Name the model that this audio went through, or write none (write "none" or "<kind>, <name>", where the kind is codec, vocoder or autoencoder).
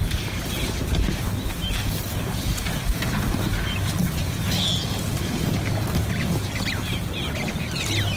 none